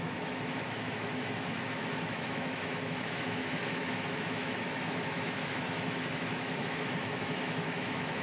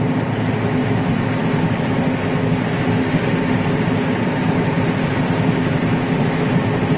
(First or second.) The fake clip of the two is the first